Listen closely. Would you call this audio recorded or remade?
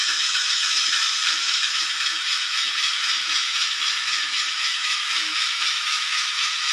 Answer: remade